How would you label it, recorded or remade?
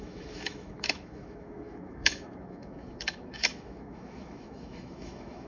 remade